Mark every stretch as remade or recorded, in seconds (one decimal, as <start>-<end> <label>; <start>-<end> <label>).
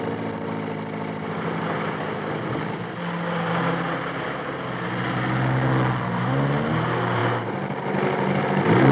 0.0-8.9 recorded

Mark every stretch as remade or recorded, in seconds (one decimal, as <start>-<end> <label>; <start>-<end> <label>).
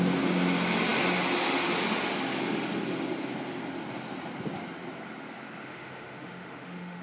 0.0-5.6 recorded; 5.6-7.0 remade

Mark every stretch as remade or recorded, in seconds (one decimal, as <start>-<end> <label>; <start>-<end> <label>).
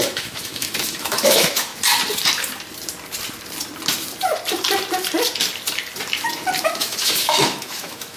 0.0-1.7 remade; 1.7-6.6 recorded; 6.6-8.2 remade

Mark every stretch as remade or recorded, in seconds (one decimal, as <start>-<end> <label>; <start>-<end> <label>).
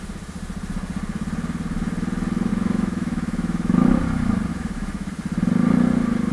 0.0-2.5 recorded; 2.5-4.0 remade; 4.0-4.5 recorded; 4.5-5.1 remade; 5.1-6.3 recorded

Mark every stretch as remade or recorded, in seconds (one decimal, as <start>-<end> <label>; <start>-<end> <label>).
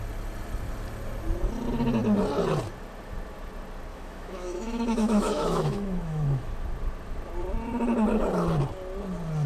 0.0-3.9 recorded; 3.9-6.6 remade; 6.6-9.5 recorded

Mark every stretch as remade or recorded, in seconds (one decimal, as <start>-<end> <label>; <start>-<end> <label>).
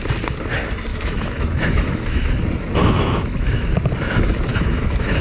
0.0-0.9 recorded; 0.9-2.3 remade; 2.3-2.8 recorded; 2.8-3.7 remade; 3.7-4.5 recorded; 4.5-5.2 remade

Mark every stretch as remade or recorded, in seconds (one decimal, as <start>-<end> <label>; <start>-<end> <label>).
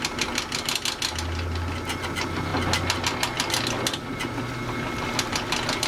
0.0-5.9 recorded